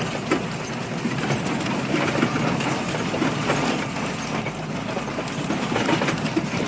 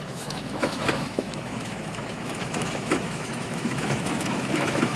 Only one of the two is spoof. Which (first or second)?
second